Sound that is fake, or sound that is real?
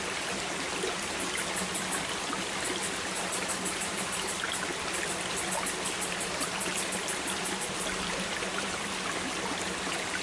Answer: real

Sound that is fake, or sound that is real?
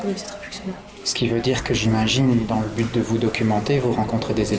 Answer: real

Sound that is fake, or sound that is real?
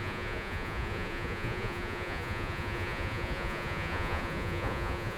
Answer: fake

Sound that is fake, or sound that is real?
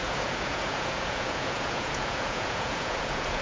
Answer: fake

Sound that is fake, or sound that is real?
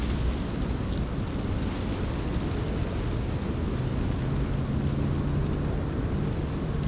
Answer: real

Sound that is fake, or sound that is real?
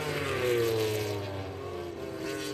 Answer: real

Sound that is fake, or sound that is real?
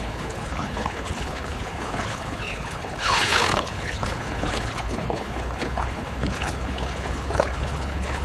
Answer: fake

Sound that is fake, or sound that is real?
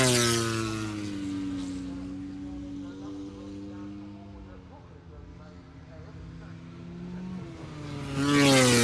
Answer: real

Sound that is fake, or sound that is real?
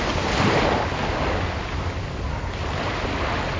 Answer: real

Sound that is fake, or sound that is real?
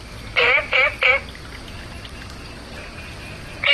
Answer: real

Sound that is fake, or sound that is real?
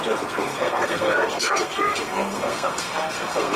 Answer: fake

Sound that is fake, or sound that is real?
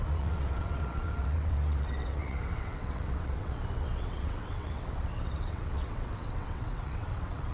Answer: fake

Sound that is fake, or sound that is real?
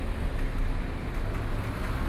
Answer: real